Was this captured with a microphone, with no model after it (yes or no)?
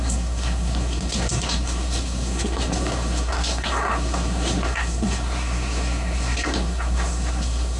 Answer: no